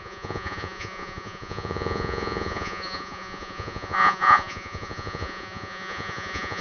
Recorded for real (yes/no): no